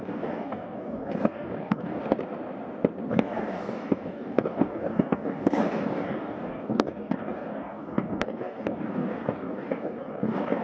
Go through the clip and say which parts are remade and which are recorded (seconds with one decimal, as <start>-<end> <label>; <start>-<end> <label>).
0.0-2.0 remade; 2.0-3.1 recorded; 3.1-10.6 remade